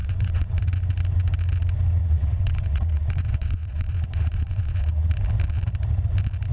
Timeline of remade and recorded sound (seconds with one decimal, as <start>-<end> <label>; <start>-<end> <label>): 0.0-0.7 remade; 0.7-2.0 recorded; 2.0-5.1 remade; 5.1-6.5 recorded